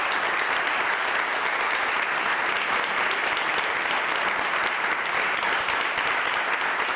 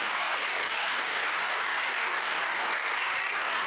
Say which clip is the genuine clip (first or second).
first